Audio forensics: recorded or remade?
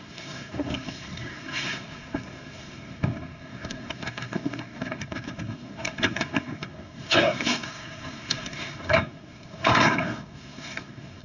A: remade